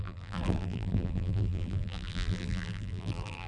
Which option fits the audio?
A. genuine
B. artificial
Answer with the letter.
B